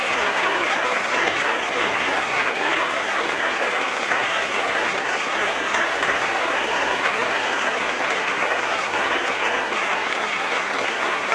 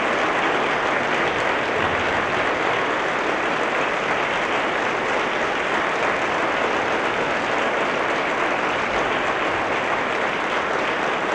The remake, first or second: first